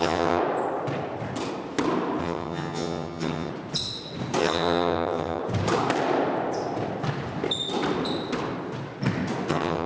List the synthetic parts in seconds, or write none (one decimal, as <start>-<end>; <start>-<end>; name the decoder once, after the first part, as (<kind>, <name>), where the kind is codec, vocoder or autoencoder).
0.0-0.4 (vocoder, HiFi-GAN); 2.2-3.5; 4.4-5.4; 9.5-9.9